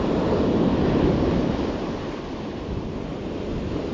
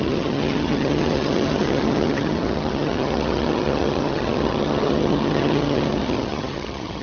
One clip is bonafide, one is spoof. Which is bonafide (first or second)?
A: first